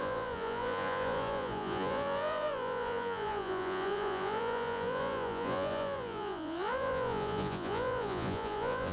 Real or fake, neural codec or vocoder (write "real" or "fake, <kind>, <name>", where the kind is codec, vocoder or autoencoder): fake, vocoder, Vocos